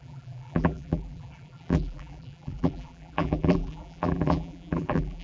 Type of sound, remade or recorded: remade